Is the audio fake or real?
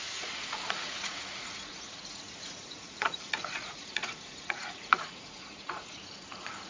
fake